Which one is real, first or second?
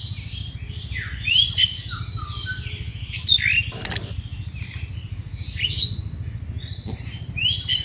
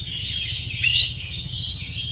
first